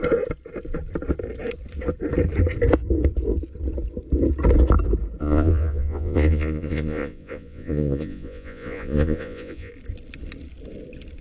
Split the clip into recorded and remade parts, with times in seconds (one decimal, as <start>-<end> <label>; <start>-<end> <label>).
0.0-5.2 recorded; 5.2-9.7 remade; 9.7-11.2 recorded